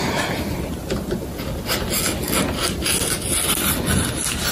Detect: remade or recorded recorded